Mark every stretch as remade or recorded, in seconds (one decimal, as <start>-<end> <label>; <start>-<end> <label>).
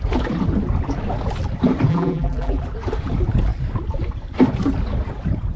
0.0-1.9 recorded; 1.9-2.6 remade; 2.6-5.6 recorded